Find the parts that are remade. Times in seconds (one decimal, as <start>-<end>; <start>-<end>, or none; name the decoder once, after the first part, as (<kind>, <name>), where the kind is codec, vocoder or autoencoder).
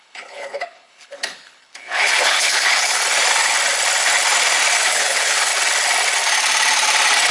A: 0.0-3.0 (codec, HILCodec); 4.8-5.5